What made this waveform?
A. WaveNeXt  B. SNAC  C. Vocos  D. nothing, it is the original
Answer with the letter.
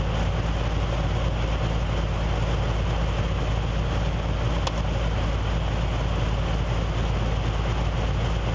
D